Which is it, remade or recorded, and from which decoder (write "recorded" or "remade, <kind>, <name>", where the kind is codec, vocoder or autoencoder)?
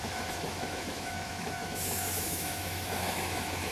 remade, autoencoder, DAC-VAE